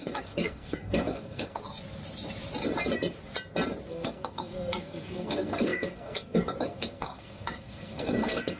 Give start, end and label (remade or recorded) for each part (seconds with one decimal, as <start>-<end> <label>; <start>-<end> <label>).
0.0-1.6 remade; 1.6-3.9 recorded; 3.9-8.6 remade